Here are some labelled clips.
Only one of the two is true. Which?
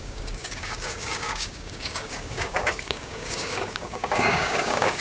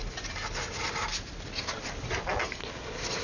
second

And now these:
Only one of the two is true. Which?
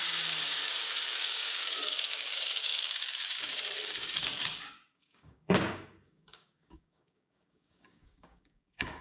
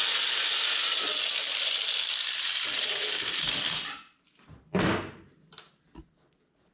second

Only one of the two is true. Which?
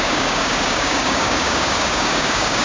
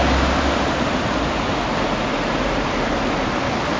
second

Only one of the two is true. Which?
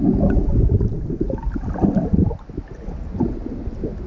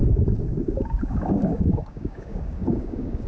first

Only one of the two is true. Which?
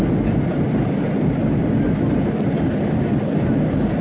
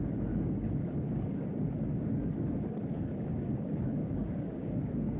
first